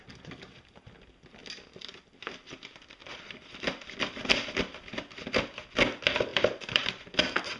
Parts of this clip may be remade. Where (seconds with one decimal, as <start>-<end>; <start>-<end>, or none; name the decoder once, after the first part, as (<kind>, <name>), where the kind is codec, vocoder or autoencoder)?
3.0-4.6 (vocoder, BigVGAN v2); 6.3-7.1